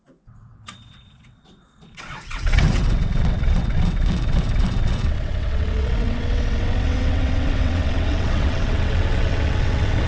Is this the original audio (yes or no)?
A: no